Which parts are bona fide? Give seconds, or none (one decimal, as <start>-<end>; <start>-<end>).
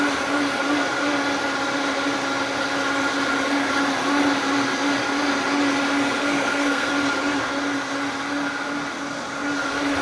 0.0-6.2; 6.9-10.0